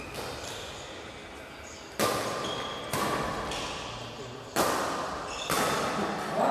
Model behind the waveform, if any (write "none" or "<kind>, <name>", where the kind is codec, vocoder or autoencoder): none